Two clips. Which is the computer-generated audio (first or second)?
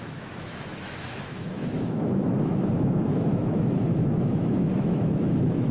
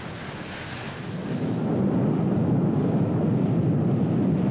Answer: first